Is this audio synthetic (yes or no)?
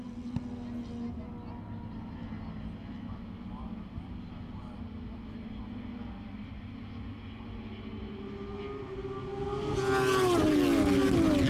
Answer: no